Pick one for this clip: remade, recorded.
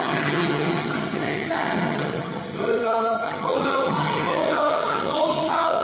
remade